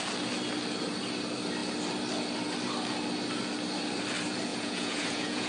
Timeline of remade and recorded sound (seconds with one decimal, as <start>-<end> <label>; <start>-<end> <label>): 0.0-4.5 recorded; 4.5-5.5 remade

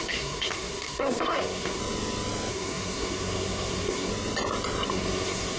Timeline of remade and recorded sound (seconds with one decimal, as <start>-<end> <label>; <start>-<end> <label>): 0.0-1.8 remade; 1.8-2.5 recorded; 2.5-4.1 remade; 4.1-4.9 recorded; 4.9-5.6 remade

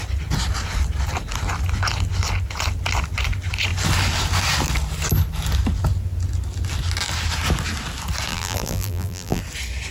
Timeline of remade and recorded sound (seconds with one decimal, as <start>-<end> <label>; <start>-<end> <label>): 0.0-8.3 recorded; 8.3-9.4 remade; 9.4-9.9 recorded

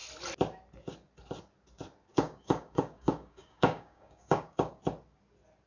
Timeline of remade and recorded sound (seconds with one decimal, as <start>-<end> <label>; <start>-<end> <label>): 0.0-2.1 recorded; 2.1-4.8 remade; 4.8-5.7 recorded

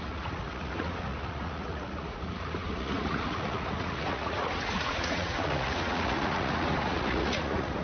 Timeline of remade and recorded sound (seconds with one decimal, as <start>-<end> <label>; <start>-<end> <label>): 0.0-7.8 remade

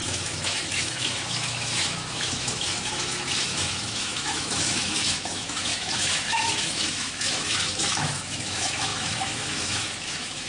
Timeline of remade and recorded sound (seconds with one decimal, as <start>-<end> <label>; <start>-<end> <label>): 0.0-10.5 remade

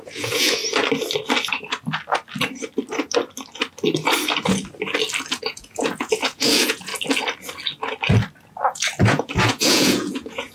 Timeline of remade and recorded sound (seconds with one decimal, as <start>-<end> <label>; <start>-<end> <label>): 0.0-0.6 remade; 0.6-5.3 recorded; 5.3-6.9 remade; 6.9-9.1 recorded; 9.1-10.5 remade